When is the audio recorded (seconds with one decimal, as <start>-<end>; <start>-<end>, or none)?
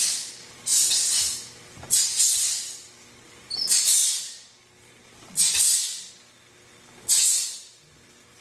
0.0-8.4